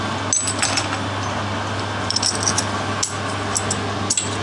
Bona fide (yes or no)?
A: yes